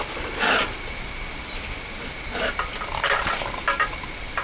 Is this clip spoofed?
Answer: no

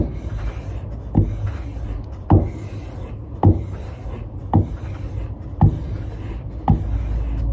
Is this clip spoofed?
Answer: no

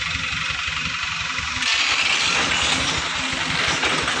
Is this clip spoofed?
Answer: no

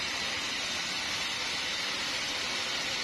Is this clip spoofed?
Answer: no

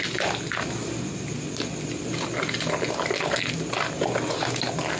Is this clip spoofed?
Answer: no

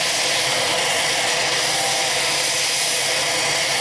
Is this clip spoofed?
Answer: no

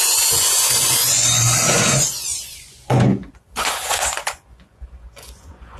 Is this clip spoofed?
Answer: yes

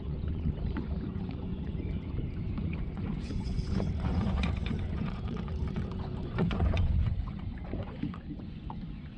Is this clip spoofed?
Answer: yes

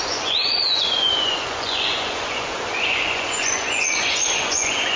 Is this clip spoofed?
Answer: yes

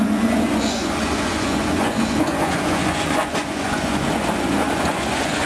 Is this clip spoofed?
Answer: yes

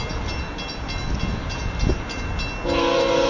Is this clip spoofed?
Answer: no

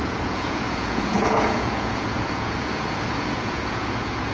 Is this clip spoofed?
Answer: yes